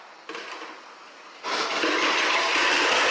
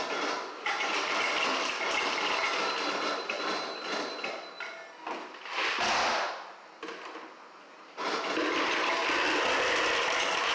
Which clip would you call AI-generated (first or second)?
first